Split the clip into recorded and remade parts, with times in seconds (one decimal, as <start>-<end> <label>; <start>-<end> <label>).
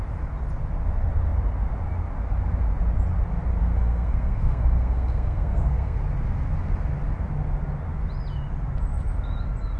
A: 0.0-3.6 recorded; 3.6-6.0 remade; 6.0-9.8 recorded